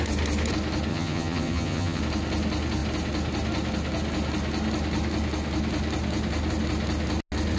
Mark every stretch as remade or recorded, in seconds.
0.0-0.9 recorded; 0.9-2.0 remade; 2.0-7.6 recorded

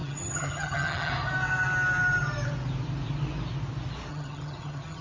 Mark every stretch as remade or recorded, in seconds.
0.0-1.1 remade; 1.1-4.1 recorded; 4.1-5.0 remade

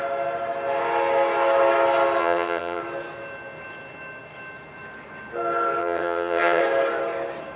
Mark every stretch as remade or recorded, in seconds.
0.0-2.2 recorded; 2.2-2.8 remade; 2.8-5.8 recorded; 5.8-6.6 remade; 6.6-7.6 recorded